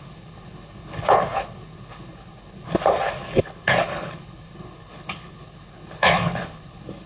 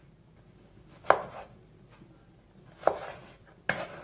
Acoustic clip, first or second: second